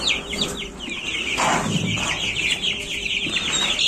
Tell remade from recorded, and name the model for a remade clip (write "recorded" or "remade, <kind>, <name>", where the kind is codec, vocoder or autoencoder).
recorded